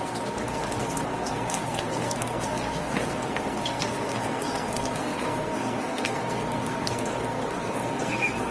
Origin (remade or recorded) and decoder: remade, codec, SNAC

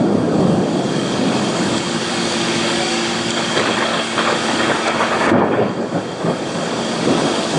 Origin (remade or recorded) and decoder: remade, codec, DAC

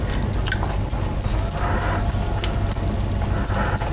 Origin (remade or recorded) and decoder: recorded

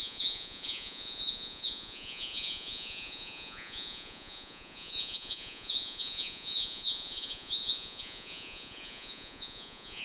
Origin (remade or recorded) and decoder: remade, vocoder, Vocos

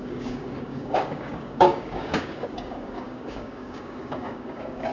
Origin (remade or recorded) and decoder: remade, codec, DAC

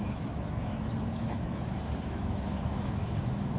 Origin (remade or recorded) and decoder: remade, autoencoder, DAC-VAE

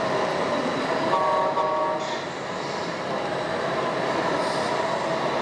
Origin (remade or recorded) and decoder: recorded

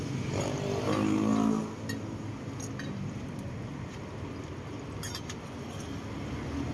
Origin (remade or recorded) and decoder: recorded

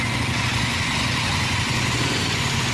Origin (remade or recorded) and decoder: remade, vocoder, Vocos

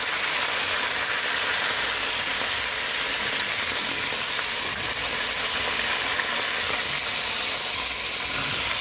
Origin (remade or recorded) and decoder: recorded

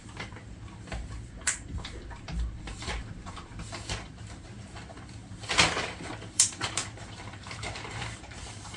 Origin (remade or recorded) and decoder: remade, vocoder, BigVGAN v2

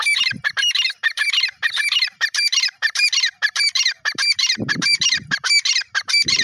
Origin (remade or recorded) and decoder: remade, vocoder, BigVGAN v2